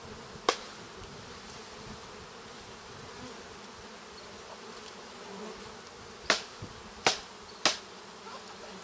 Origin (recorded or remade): recorded